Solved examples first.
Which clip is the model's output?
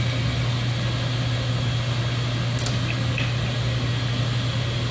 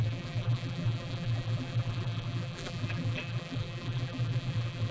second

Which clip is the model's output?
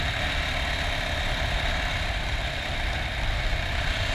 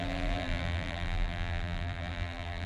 second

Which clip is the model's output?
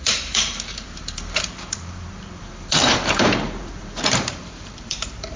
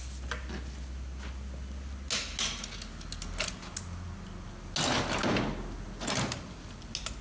first